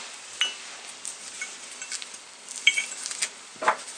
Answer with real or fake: real